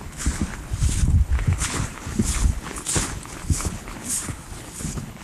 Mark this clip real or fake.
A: fake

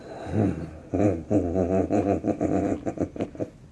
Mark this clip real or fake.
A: real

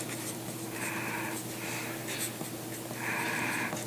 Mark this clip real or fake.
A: real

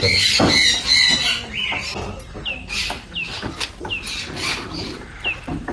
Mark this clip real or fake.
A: real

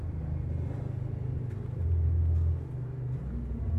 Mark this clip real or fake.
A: real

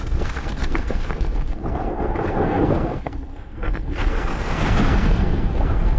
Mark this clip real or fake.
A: fake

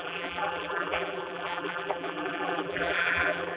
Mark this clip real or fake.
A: fake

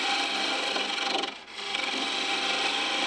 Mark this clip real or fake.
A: real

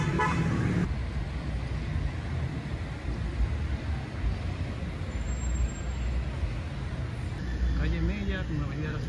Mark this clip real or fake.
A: real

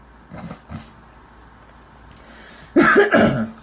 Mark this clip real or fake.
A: real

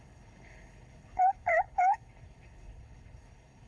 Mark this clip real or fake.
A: fake